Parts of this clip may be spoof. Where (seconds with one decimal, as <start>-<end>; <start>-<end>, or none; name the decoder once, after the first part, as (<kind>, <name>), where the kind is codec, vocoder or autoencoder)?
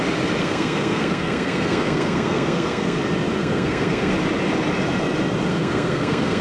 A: 0.4-3.0 (codec, SNAC); 3.4-4.1; 5.5-6.4